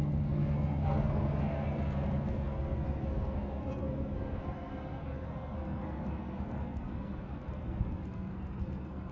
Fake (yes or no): yes